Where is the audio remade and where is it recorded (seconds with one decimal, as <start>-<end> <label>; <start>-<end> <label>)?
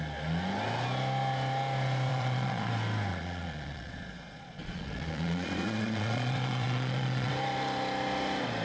0.0-2.1 recorded; 2.1-2.7 remade; 2.7-3.1 recorded; 3.1-7.3 remade; 7.3-8.6 recorded